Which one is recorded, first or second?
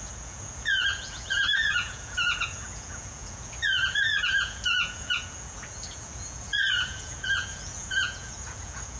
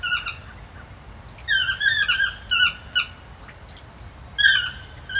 second